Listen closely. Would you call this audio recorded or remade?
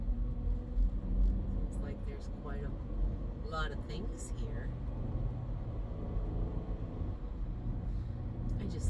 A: recorded